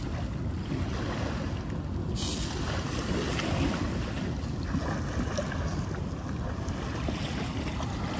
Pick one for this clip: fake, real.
real